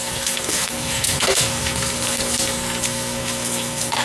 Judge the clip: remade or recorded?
remade